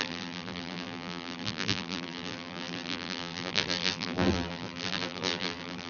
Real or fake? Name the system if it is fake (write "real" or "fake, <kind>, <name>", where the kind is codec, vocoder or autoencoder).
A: fake, vocoder, BigVGAN v2